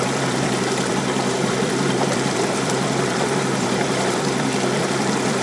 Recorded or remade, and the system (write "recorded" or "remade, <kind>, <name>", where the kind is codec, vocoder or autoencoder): remade, vocoder, BigVGAN v2